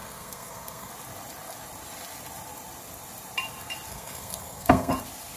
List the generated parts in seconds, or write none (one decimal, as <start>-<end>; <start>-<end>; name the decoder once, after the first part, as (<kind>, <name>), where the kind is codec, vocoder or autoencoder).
0.0-0.9 (codec, SNAC); 3.9-4.9